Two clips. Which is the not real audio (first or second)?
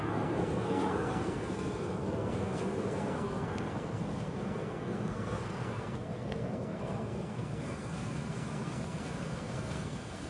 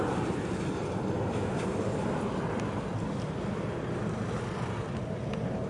first